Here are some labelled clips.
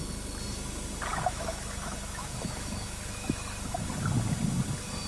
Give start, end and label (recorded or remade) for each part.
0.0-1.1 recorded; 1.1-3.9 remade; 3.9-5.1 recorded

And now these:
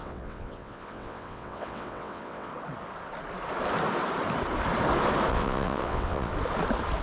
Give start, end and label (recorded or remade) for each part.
0.0-2.5 remade; 2.5-5.3 recorded; 5.3-6.3 remade; 6.3-7.0 recorded

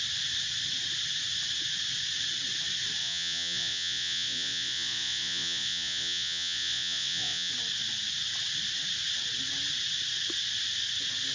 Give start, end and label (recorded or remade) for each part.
0.0-3.0 recorded; 3.0-7.5 remade; 7.5-11.3 recorded

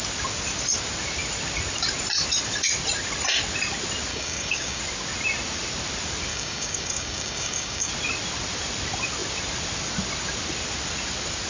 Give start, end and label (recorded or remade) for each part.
0.0-4.1 recorded; 4.1-4.8 remade; 4.8-6.3 recorded; 6.3-7.9 remade; 7.9-11.5 recorded